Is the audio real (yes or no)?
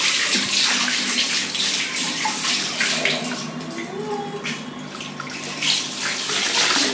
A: yes